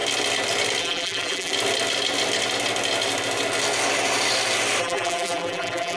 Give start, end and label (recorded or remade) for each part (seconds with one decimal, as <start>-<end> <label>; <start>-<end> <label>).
0.0-0.8 recorded; 0.8-1.5 remade; 1.5-4.8 recorded; 4.8-6.0 remade